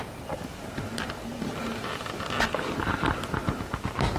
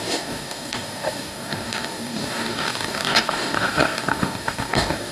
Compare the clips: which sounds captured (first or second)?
first